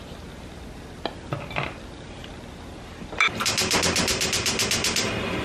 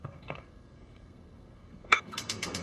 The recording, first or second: first